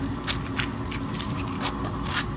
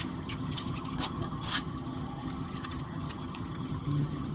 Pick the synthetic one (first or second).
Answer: second